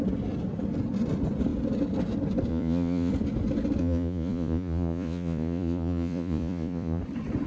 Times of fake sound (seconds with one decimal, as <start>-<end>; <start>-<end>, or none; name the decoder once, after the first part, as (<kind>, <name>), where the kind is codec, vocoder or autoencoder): 2.5-3.1 (vocoder, Vocos); 3.8-7.0